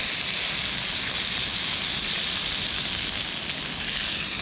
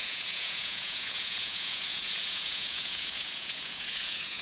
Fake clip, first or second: second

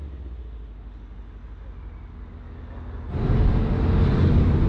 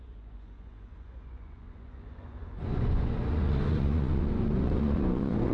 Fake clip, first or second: second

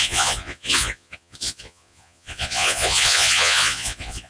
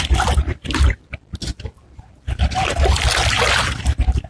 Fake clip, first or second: first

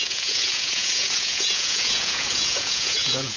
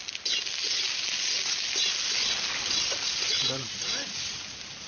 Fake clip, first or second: first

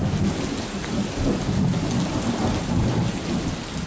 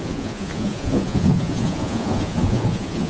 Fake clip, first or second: second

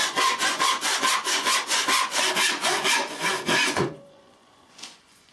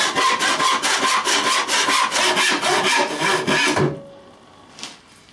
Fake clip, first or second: first